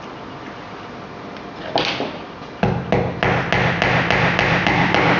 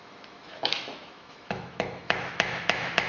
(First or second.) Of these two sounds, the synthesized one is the second